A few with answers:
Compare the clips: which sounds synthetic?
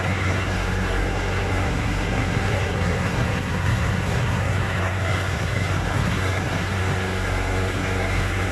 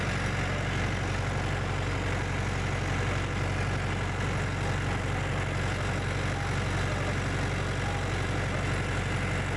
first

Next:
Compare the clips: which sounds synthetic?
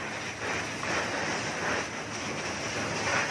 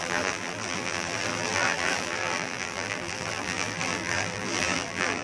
second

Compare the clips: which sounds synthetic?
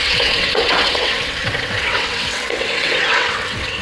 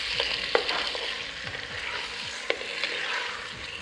first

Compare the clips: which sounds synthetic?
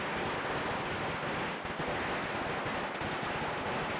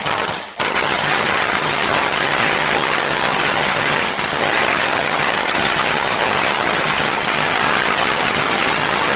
second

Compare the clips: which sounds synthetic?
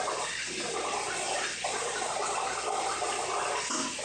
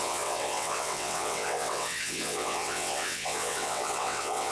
second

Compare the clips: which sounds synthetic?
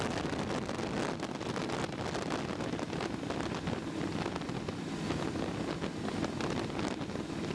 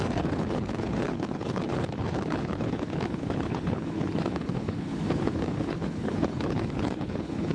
second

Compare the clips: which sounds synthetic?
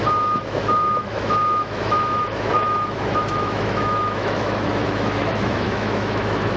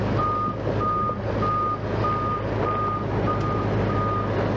first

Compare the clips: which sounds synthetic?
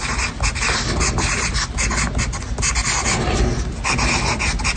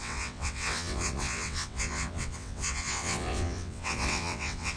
second